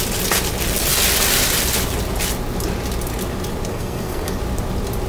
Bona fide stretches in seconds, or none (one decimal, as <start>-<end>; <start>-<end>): 0.0-3.7; 4.4-5.1